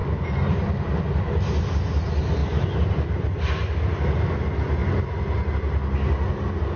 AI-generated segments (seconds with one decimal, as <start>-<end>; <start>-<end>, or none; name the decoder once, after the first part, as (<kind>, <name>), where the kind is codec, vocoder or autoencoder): 0.0-1.7 (vocoder, BigVGAN v2); 2.4-3.5